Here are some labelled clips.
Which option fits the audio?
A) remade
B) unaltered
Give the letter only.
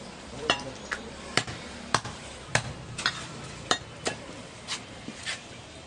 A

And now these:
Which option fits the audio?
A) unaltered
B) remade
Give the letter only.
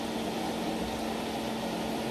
A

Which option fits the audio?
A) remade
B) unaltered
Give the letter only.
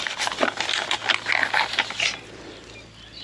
B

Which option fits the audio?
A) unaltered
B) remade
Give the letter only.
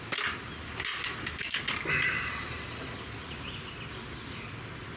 A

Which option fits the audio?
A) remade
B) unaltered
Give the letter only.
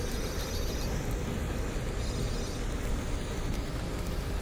B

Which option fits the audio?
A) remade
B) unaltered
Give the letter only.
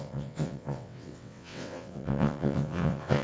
A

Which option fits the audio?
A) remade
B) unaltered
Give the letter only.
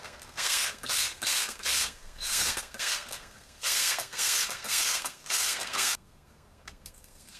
A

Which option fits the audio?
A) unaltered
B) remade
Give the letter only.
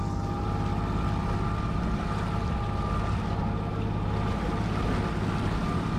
A